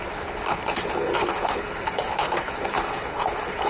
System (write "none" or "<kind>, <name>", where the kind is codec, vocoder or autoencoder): codec, HILCodec